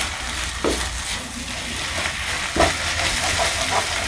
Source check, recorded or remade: recorded